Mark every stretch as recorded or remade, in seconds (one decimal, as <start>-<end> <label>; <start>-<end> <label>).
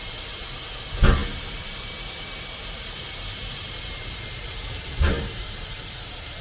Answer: 0.0-6.4 remade